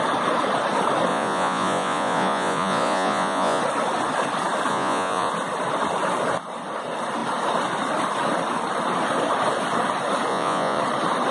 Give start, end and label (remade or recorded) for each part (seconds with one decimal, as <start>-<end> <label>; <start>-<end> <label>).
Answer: 0.0-1.1 recorded; 1.1-3.6 remade; 3.6-4.7 recorded; 4.7-5.3 remade; 5.3-10.3 recorded; 10.3-10.8 remade; 10.8-11.3 recorded